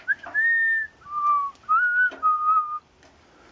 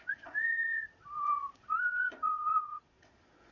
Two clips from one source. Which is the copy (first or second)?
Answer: second